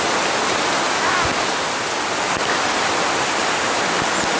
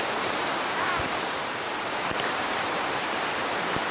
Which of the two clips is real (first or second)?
first